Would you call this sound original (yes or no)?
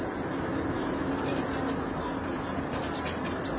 yes